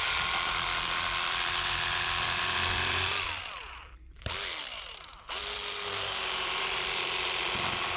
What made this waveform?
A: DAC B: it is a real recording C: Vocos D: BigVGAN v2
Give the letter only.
D